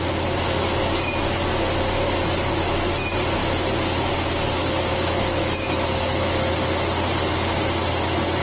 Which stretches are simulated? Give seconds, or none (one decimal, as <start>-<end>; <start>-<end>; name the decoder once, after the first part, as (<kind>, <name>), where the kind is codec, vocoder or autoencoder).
4.6-6.5 (autoencoder, DAC-VAE)